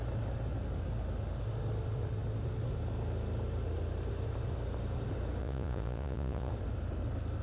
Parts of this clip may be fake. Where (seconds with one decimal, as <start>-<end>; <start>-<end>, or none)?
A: 5.4-6.5